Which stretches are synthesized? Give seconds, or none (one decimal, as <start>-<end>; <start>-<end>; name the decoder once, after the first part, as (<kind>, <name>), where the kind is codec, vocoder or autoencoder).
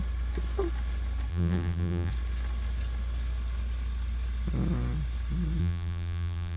1.3-2.1 (vocoder, BigVGAN v2); 5.6-6.6